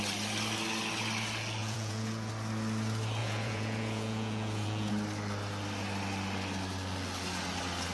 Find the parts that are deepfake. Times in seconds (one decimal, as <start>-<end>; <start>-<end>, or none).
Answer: 1.6-2.3; 3.2-4.9